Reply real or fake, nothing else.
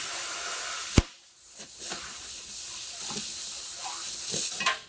real